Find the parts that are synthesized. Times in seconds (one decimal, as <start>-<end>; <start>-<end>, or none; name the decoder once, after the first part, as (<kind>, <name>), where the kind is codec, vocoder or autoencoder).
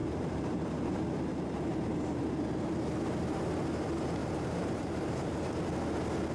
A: 0.0-2.6 (vocoder, BigVGAN v2); 4.2-5.4